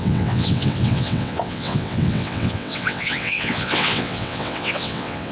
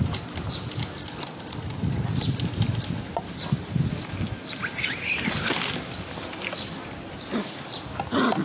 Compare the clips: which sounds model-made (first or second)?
first